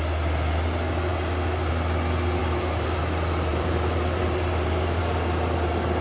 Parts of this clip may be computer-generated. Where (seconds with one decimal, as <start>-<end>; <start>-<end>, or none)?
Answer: 2.4-3.0; 3.5-5.0